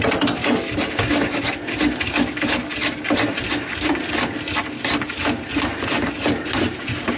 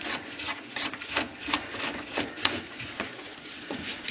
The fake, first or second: second